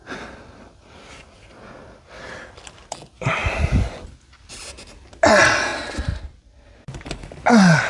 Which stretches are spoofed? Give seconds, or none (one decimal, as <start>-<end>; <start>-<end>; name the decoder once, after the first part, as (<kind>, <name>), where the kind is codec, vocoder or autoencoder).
none